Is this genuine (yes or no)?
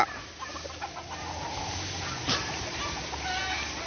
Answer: yes